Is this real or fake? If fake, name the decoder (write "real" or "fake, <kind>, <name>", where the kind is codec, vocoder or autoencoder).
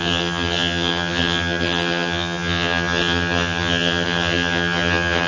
fake, vocoder, HiFi-GAN